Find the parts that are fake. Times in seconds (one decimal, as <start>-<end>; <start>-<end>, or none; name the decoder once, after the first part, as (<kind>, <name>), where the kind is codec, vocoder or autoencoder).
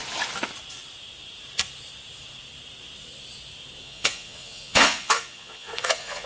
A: 3.8-6.3 (vocoder, Vocos)